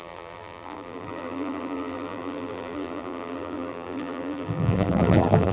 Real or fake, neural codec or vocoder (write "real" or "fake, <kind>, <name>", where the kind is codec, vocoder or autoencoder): fake, vocoder, BigVGAN v2